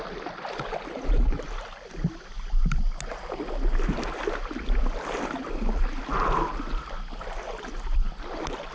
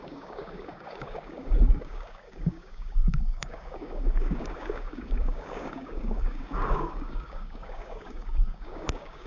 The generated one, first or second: second